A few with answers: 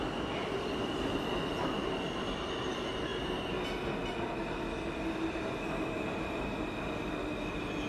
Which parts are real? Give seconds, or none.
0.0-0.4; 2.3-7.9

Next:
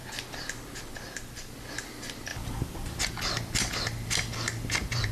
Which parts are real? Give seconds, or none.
0.0-2.3; 3.0-5.1

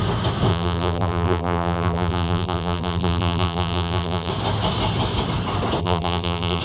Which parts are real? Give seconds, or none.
0.0-0.5; 4.3-5.8

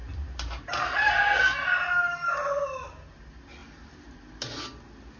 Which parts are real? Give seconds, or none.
1.2-3.6; 4.6-5.2